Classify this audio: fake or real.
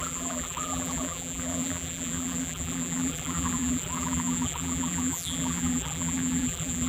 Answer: fake